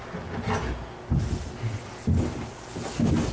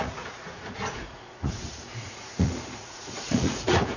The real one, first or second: first